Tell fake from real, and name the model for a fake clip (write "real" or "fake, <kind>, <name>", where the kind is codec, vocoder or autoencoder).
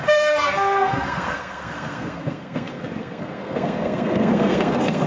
fake, codec, SNAC